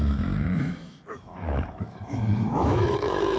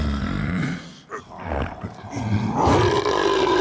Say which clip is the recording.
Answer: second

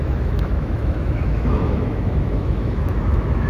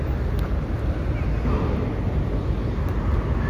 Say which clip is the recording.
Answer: second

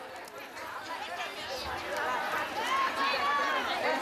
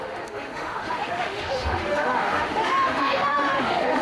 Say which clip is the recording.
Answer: first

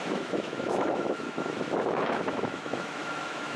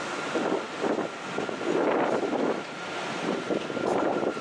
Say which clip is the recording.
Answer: second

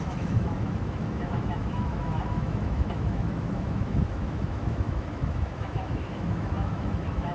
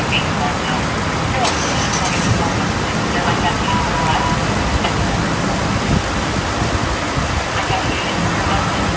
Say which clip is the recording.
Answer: second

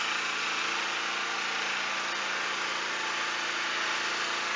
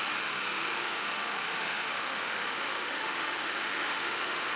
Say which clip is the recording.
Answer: first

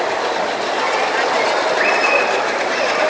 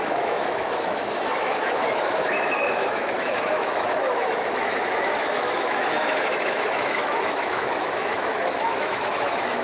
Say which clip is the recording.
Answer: first